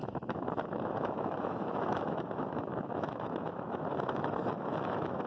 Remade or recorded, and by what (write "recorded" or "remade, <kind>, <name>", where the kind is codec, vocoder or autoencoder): remade, autoencoder, DAC-VAE